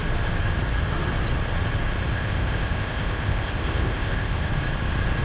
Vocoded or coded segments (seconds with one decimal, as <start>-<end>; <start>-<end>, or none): 2.1-4.5